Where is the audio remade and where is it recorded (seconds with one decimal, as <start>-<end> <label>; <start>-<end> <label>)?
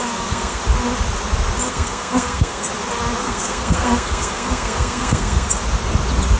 0.0-0.6 remade; 0.6-1.7 recorded; 1.7-2.7 remade; 2.7-3.2 recorded; 3.2-5.5 remade; 5.5-6.4 recorded